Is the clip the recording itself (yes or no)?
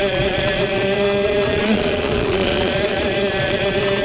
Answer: no